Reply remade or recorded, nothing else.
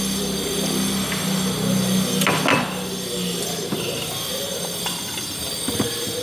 recorded